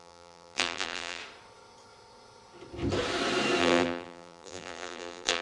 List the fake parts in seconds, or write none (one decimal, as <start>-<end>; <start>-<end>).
0.0-1.2; 3.6-5.4